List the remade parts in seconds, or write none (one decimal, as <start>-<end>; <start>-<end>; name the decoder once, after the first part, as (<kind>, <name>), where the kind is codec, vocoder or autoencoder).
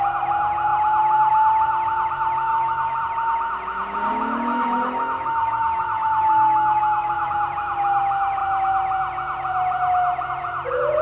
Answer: 2.5-3.0 (autoencoder, DAC-VAE); 4.5-7.3